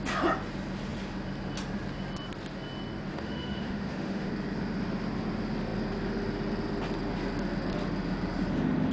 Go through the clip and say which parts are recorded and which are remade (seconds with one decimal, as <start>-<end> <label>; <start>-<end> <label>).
0.0-3.1 recorded; 3.1-4.3 remade; 4.3-8.9 recorded